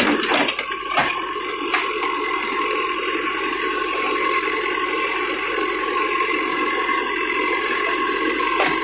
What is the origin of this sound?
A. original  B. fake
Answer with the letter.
A